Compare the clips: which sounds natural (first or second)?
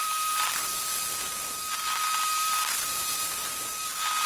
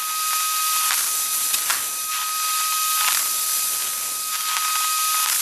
second